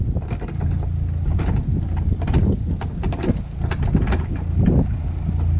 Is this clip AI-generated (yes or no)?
no